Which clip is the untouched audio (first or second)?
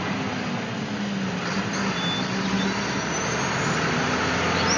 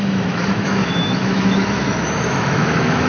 first